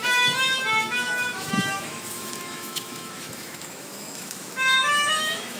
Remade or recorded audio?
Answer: remade